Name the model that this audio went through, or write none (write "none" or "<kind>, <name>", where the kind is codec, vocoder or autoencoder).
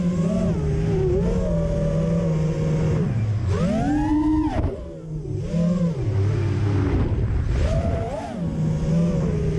none